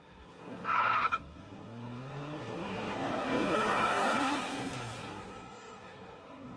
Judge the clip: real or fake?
fake